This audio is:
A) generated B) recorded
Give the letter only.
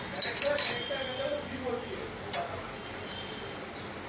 B